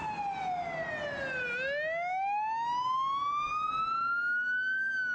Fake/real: real